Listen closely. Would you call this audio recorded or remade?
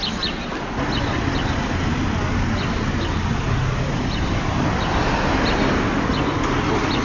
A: recorded